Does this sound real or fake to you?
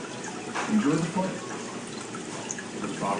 fake